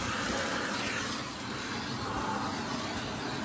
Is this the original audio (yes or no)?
yes